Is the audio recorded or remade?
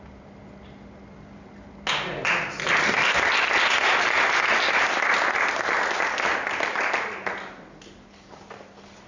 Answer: recorded